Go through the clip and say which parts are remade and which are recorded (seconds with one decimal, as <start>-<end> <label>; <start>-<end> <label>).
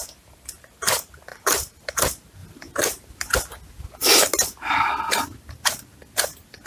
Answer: 0.0-1.3 recorded; 1.3-2.0 remade; 2.0-6.7 recorded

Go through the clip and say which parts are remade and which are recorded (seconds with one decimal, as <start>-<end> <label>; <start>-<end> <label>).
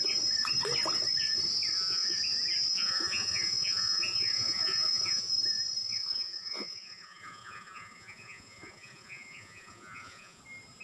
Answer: 0.0-1.7 recorded; 1.7-2.2 remade; 2.2-2.7 recorded; 2.7-5.3 remade; 5.3-5.8 recorded; 5.8-10.4 remade; 10.4-10.8 recorded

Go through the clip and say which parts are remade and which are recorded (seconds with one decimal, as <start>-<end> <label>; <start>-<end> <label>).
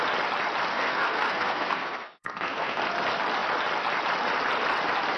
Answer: 0.0-0.7 recorded; 0.7-2.8 remade; 2.8-5.2 recorded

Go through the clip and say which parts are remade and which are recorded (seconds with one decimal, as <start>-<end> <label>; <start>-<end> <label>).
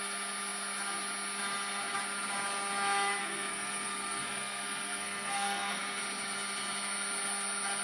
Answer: 0.0-3.2 recorded; 3.2-6.0 remade; 6.0-7.8 recorded